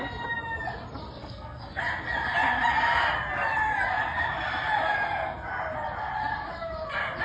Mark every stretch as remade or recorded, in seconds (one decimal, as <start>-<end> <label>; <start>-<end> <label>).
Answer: 0.0-1.2 recorded; 1.2-1.8 remade; 1.8-7.2 recorded